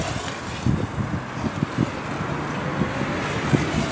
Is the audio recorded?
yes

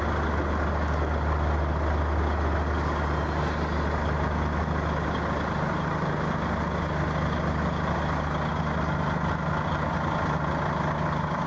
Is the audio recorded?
yes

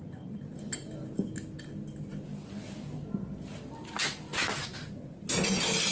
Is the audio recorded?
yes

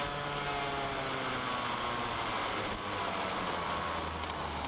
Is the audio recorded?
yes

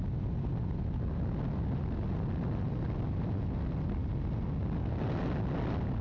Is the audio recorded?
yes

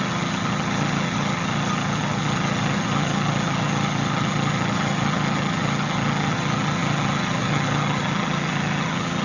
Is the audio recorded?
no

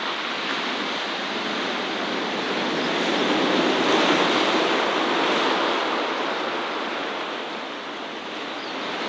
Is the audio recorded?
yes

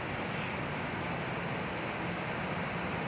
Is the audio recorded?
yes